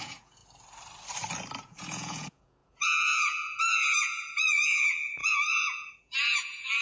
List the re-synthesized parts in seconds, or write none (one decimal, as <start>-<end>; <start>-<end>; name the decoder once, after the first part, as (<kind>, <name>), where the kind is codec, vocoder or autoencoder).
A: 0.0-0.4 (vocoder, Vocos); 1.6-6.8